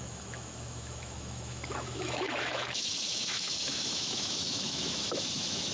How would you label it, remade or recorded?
remade